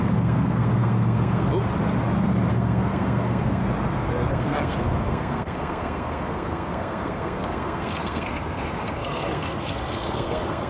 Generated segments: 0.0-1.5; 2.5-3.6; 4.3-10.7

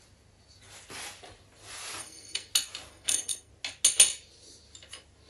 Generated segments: 2.0-2.5; 2.9-3.5

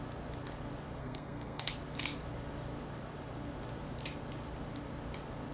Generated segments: 1.0-1.7

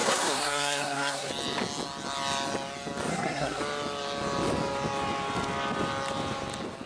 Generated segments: 0.0-1.3; 3.1-3.6

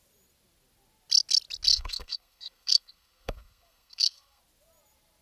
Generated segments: 1.7-4.4